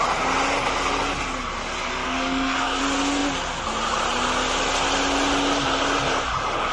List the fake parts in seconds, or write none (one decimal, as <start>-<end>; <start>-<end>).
2.0-2.8